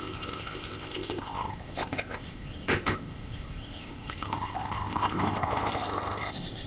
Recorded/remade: remade